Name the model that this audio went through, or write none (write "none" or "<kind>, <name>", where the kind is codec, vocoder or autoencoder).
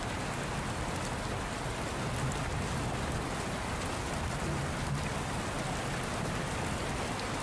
none